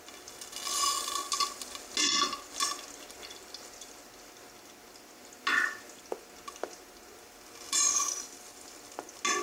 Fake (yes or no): no